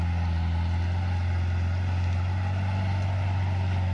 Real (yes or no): yes